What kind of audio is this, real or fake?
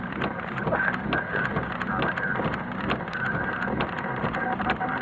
real